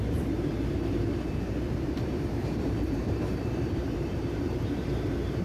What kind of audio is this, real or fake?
fake